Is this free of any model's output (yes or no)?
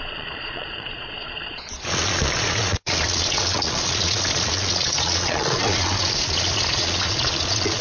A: no